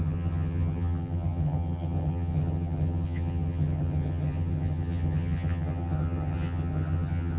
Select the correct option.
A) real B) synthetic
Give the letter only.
B